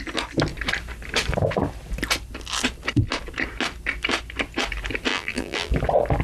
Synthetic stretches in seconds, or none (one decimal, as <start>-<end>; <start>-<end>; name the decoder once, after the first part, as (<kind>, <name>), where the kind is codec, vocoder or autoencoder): 5.1-5.7 (vocoder, BigVGAN v2)